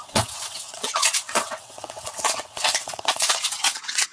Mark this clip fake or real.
fake